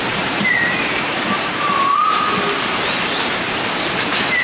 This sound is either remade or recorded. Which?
remade